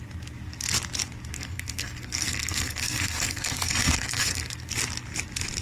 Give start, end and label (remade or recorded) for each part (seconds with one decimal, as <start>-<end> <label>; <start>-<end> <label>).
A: 0.0-1.3 recorded; 1.3-4.7 remade; 4.7-5.6 recorded